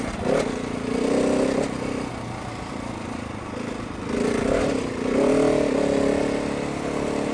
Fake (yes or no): no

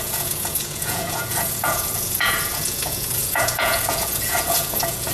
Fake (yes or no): yes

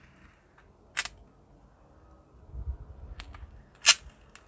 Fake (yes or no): no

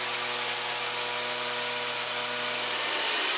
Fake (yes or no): no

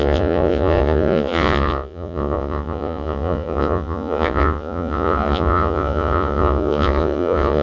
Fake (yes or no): yes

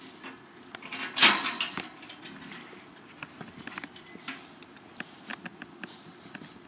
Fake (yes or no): no